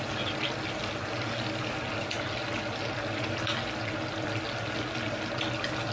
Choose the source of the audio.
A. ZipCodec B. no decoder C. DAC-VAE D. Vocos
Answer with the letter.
B